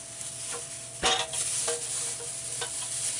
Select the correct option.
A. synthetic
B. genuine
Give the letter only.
B